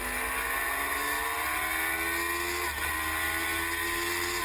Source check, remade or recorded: recorded